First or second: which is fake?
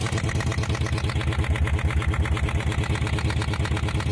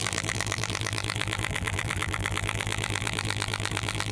second